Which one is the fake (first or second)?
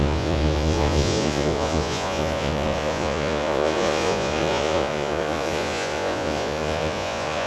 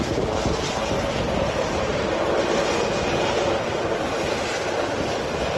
first